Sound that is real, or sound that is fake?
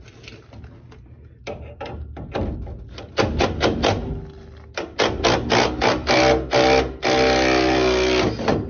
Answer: real